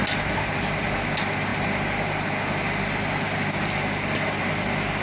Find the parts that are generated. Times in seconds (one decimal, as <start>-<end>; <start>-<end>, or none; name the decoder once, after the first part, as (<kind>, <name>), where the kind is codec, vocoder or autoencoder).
none